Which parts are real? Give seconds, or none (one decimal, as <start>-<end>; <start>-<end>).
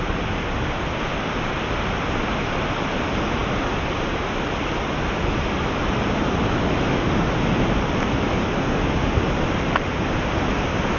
0.0-11.0